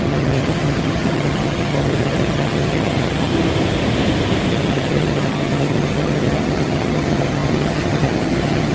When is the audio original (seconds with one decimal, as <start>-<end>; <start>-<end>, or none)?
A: 3.3-4.5